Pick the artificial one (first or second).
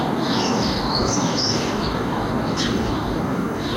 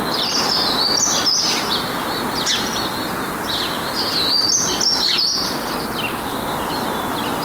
first